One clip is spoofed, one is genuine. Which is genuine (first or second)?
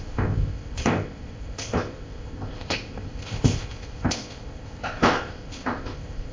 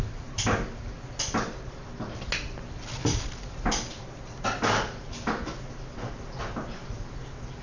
second